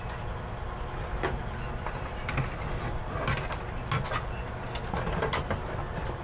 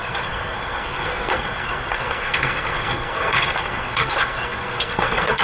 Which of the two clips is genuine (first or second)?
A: first